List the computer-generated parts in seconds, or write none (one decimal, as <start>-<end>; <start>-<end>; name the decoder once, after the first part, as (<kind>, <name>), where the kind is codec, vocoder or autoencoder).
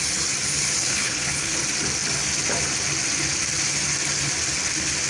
0.9-1.6 (codec, HILCodec)